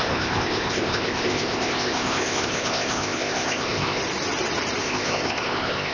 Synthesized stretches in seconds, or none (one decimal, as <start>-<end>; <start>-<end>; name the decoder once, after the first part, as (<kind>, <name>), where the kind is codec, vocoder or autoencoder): 0.0-4.0 (codec, ZipCodec); 4.8-5.9